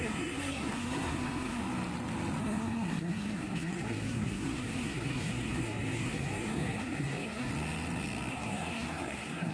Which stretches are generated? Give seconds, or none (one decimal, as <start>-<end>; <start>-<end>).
0.0-1.6; 2.4-7.5; 8.3-9.5